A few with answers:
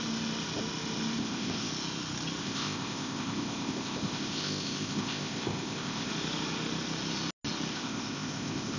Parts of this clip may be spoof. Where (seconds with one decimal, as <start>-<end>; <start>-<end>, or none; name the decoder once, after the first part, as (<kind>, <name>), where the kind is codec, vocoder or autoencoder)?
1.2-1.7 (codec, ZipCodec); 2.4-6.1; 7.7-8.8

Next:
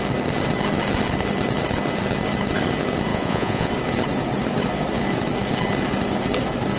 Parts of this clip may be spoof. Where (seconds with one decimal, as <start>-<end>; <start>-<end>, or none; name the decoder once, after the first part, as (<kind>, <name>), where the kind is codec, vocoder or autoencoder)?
3.1-3.7 (vocoder, Vocos)

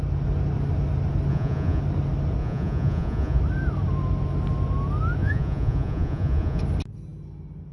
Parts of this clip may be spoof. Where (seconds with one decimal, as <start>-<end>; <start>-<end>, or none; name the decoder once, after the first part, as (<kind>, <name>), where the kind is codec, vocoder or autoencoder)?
1.3-1.8 (vocoder, Vocos); 2.4-3.4; 5.2-6.6